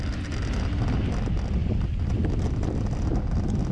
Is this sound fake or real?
real